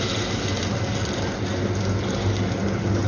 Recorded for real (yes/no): yes